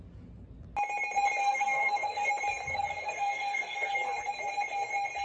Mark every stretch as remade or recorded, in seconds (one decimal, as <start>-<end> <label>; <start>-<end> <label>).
0.0-1.4 recorded; 1.4-2.3 remade; 2.3-2.7 recorded; 2.7-3.9 remade; 3.9-5.2 recorded